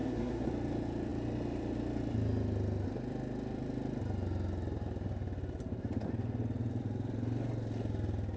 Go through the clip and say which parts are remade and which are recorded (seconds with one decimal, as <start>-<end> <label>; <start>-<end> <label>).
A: 0.0-0.5 remade; 0.5-8.4 recorded